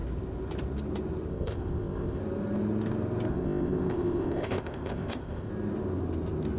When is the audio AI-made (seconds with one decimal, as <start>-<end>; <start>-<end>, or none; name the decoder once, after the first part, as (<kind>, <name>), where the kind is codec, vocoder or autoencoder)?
1.3-2.2 (codec, ZipCodec); 3.3-5.5